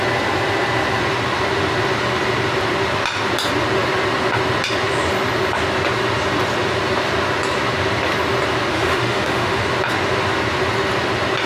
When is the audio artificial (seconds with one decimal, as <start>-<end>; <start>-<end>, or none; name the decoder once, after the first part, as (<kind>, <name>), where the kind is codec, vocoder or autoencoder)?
8.7-9.6 (autoencoder, DAC-VAE)